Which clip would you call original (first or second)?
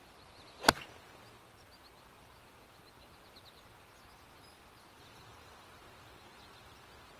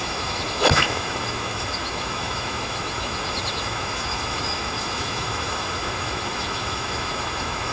first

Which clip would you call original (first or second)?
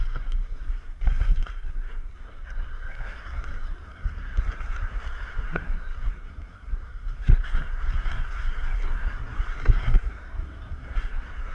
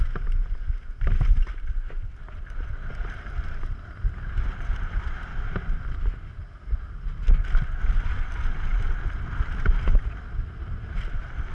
second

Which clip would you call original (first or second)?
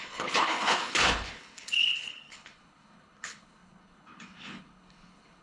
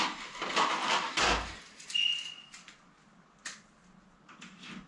second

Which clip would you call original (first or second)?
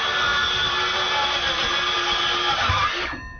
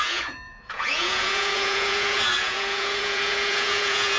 first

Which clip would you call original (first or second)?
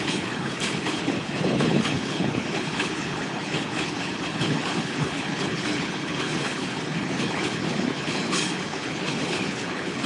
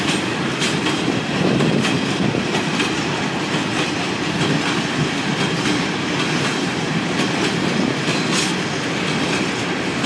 second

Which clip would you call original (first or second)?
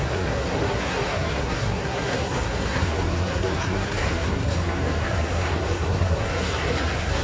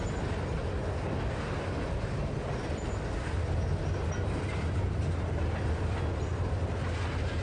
second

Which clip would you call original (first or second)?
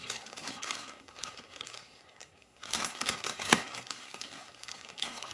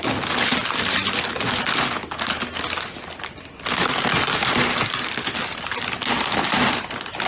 second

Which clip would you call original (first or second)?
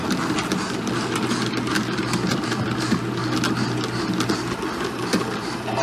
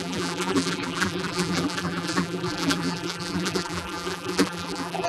first